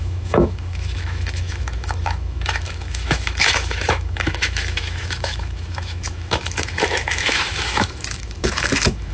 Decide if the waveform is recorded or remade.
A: remade